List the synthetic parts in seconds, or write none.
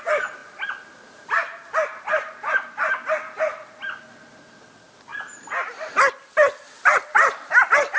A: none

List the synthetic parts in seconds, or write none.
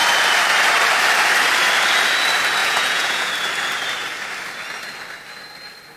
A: 2.6-3.3 (vocoder, Vocos)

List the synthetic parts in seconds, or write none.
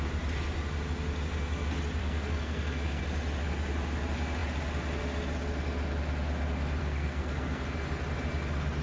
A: 2.0-3.0 (codec, SNAC); 6.8-7.6